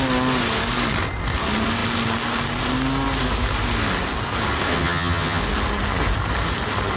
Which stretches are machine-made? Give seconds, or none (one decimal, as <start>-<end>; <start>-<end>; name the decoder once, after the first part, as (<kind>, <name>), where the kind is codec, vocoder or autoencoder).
4.7-5.4 (vocoder, HiFi-GAN)